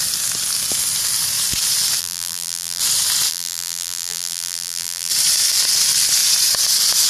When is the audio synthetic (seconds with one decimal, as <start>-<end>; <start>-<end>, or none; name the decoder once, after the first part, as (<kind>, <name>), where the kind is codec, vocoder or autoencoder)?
2.0-2.8 (vocoder, BigVGAN v2); 3.3-5.1